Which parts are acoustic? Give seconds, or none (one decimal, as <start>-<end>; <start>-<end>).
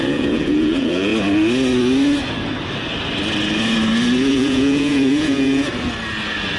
1.1-4.3; 5.7-6.6